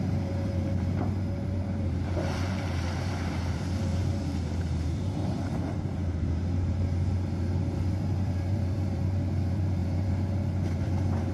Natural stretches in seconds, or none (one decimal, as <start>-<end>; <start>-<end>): none